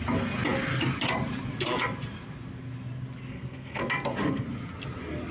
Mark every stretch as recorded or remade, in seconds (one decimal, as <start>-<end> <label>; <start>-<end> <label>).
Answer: 0.0-3.3 recorded; 3.3-3.8 remade; 3.8-5.3 recorded